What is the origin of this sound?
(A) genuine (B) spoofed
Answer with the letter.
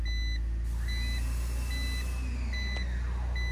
A